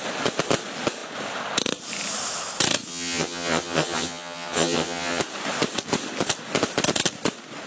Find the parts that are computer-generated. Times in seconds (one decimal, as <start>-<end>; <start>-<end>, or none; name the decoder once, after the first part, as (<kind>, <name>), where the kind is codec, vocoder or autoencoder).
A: 2.9-5.2 (vocoder, HiFi-GAN)